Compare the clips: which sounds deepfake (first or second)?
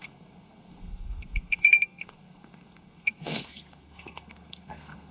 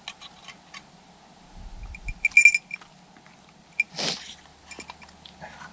first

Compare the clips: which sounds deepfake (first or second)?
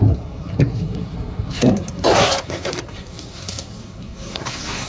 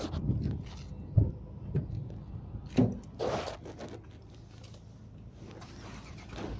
first